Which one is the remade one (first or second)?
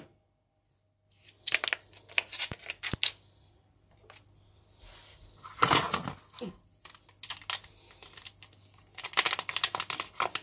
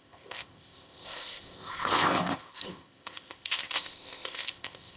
second